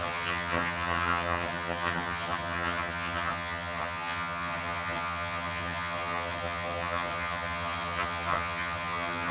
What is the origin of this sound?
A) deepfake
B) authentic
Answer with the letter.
A